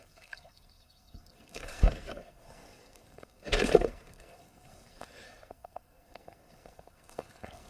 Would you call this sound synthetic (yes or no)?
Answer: yes